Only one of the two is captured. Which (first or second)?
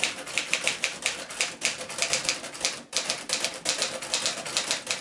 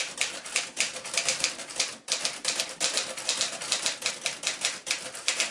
first